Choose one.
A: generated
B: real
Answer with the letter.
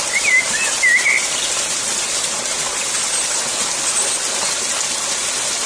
B